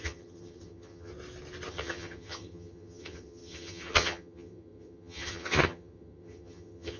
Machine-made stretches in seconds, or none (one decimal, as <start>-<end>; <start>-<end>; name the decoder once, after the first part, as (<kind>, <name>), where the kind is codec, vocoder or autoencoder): 0.0-1.1 (vocoder, HiFi-GAN); 1.7-7.0